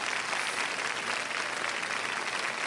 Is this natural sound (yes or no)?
yes